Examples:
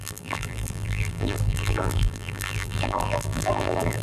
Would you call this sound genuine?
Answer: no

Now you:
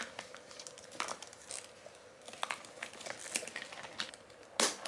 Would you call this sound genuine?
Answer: yes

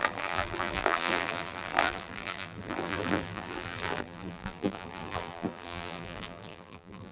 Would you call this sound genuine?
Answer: no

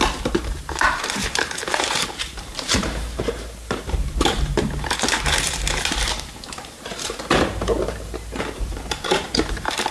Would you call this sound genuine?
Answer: no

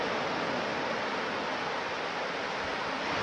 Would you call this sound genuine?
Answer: yes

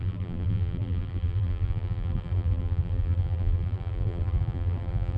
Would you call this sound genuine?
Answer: no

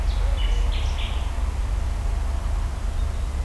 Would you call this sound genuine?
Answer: yes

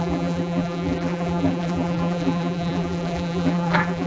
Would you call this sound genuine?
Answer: no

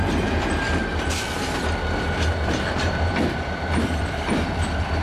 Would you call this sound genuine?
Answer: no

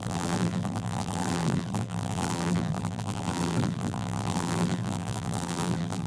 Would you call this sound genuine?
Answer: no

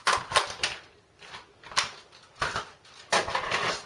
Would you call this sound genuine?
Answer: yes